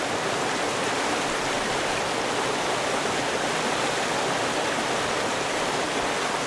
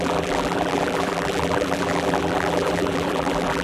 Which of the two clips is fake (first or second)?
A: second